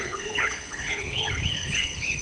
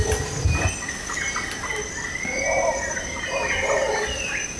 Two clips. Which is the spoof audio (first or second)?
first